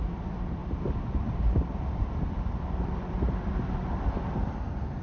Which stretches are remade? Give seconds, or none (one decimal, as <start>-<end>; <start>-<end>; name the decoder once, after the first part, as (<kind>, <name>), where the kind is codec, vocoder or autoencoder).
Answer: 0.0-5.0 (vocoder, BigVGAN v2)